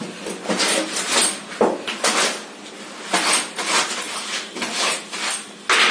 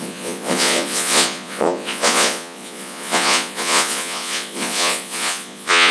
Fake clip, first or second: second